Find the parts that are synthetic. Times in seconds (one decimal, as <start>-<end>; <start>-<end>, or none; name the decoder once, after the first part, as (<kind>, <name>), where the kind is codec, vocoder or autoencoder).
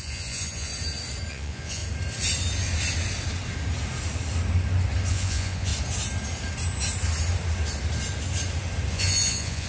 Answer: 0.0-0.7 (vocoder, Vocos); 1.3-1.8; 5.1-5.7; 8.9-9.7